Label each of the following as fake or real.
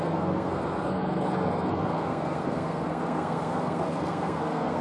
fake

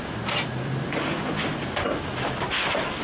real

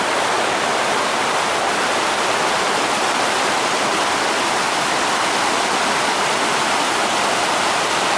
real